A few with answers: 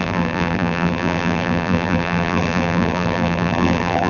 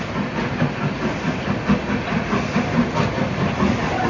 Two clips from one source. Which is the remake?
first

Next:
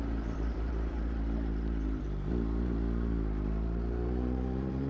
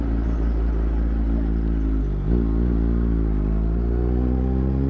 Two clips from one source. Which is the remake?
first